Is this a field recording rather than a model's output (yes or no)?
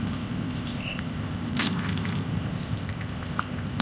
no